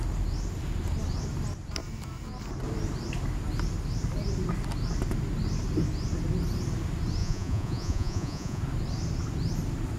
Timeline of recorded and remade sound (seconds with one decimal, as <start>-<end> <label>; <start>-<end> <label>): 0.0-7.2 recorded; 7.2-8.6 remade; 8.6-10.0 recorded